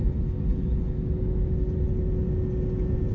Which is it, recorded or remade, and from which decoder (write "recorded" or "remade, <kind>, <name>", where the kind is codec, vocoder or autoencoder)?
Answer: recorded